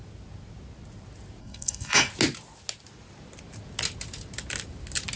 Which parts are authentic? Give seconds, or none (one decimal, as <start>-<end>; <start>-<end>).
0.0-1.4; 2.1-5.2

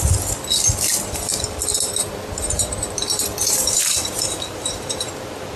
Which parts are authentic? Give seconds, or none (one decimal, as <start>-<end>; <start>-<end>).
0.0-1.7; 5.1-5.6

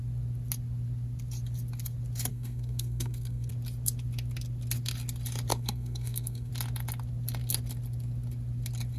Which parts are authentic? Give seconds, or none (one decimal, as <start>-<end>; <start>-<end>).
0.0-2.3; 3.5-5.5; 6.5-9.0

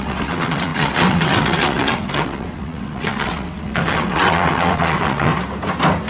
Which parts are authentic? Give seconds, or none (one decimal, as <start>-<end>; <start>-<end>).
5.3-6.1

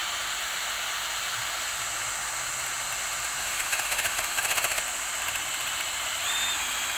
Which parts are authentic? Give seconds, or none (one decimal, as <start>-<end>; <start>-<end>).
0.0-3.4; 4.8-7.0